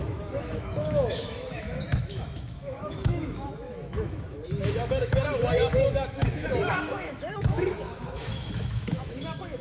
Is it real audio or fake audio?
fake